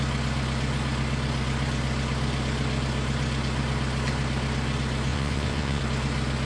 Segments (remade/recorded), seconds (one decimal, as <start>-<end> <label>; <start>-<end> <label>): 0.0-5.1 recorded; 5.1-5.8 remade; 5.8-6.5 recorded